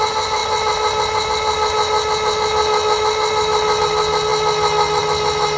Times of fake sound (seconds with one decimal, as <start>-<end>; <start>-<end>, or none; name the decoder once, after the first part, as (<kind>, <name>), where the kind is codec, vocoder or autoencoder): none